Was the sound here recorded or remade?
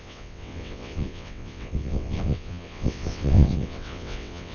remade